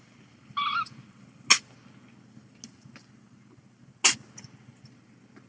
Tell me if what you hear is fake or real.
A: real